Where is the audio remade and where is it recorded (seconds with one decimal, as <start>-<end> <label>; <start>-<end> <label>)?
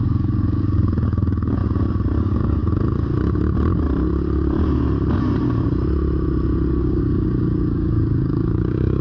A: 0.0-1.6 remade; 1.6-2.2 recorded; 2.2-2.6 remade; 2.6-6.8 recorded; 6.8-9.0 remade